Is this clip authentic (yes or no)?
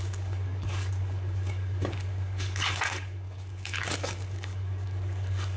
no